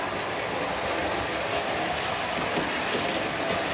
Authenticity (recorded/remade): recorded